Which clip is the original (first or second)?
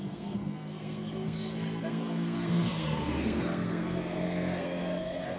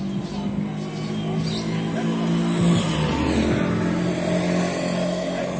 second